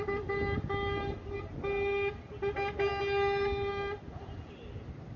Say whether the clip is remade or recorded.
recorded